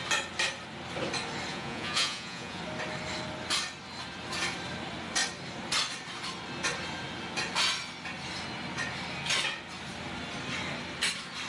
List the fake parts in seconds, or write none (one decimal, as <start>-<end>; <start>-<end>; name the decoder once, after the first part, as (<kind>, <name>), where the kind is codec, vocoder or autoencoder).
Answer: 1.5-2.6 (vocoder, Vocos)